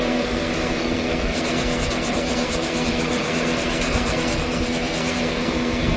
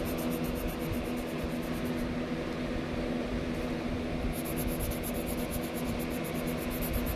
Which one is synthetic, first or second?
first